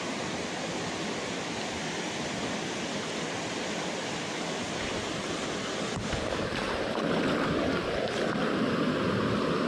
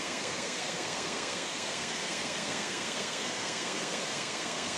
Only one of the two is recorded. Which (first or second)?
first